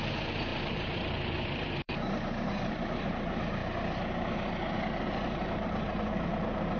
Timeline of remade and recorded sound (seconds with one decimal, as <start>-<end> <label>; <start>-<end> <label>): 0.0-3.6 remade; 3.6-5.0 recorded; 5.0-6.8 remade